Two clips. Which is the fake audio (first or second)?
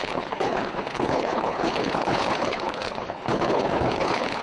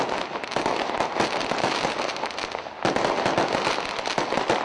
first